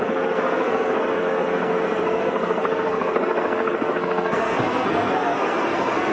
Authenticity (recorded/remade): remade